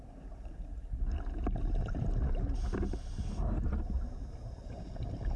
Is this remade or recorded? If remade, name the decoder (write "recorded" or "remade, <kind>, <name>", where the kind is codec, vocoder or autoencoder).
recorded